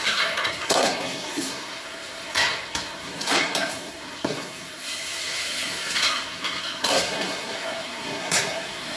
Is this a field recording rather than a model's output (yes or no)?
no